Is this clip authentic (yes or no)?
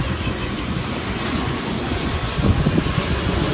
no